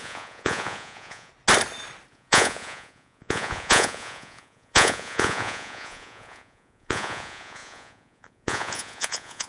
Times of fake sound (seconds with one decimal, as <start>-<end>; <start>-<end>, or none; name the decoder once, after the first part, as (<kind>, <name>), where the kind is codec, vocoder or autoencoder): 0.0-1.3 (vocoder, Vocos); 2.1-9.5